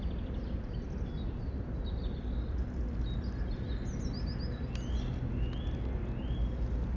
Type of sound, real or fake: real